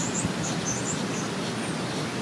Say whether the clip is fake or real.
real